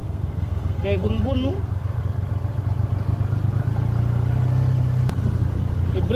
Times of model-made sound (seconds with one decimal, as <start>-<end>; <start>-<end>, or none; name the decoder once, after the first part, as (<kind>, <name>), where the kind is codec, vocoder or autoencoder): 0.0-2.0 (codec, SNAC)